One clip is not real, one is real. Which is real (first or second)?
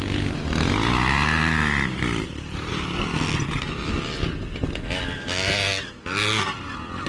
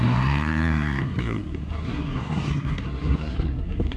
first